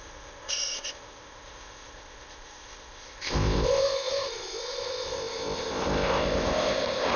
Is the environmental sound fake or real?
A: fake